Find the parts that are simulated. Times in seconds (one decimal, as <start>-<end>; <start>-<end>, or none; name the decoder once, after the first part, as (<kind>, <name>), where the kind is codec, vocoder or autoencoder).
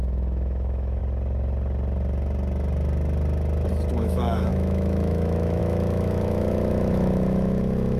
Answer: 0.0-1.0 (autoencoder, DAC-VAE); 3.9-8.0